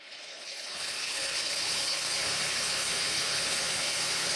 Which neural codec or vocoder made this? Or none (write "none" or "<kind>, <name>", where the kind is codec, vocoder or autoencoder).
codec, HILCodec